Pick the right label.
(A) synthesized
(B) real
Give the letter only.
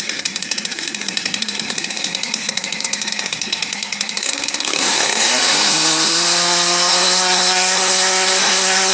A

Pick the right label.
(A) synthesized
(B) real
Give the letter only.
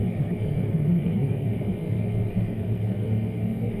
A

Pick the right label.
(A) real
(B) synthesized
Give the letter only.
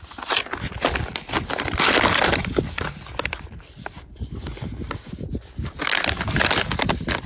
A